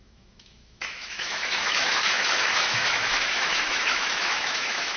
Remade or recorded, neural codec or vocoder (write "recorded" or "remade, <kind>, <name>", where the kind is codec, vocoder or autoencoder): remade, autoencoder, DAC-VAE